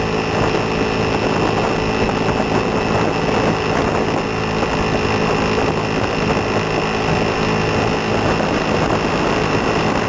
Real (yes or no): yes